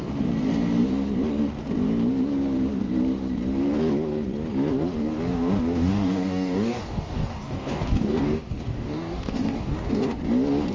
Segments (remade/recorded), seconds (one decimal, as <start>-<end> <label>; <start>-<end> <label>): 0.0-5.3 recorded; 5.3-10.2 remade; 10.2-10.7 recorded